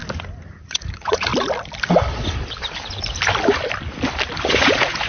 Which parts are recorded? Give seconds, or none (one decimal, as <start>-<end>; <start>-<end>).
0.0-0.6; 1.3-4.4